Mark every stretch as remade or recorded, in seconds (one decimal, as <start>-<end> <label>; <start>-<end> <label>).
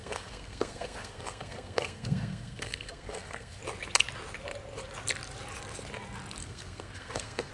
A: 0.0-3.6 remade; 3.6-6.4 recorded; 6.4-7.5 remade